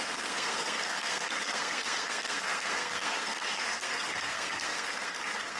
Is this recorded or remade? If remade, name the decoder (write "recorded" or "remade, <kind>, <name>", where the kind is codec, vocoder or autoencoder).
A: remade, codec, SNAC